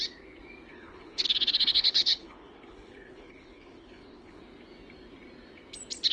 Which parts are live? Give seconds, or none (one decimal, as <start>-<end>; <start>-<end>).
0.0-0.7; 4.4-6.1